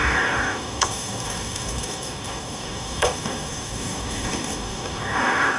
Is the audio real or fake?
fake